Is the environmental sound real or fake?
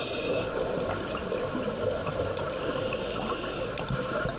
real